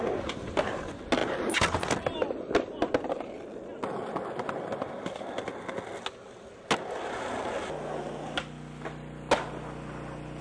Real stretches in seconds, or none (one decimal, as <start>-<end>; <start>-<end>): 0.0-10.4